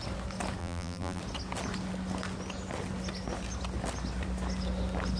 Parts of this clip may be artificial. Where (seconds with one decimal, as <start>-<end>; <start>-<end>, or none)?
0.6-1.2